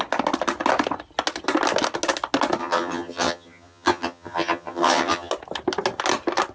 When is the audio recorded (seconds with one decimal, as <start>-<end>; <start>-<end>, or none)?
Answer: 0.0-2.6; 5.3-6.5